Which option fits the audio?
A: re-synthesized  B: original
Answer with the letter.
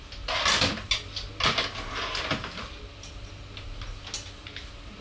B